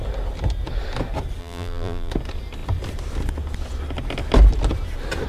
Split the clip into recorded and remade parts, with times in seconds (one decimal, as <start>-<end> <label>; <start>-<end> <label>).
0.0-1.4 recorded; 1.4-2.1 remade; 2.1-5.3 recorded